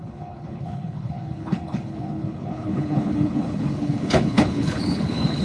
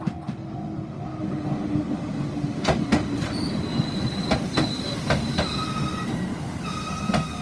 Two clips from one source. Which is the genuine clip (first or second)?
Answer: second